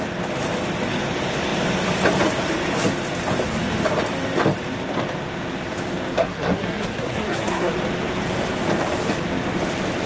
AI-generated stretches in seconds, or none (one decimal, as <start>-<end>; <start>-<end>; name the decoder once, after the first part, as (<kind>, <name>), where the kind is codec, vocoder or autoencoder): 6.1-7.7 (codec, SNAC)